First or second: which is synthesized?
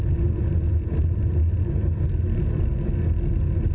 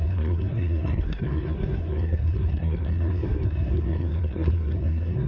second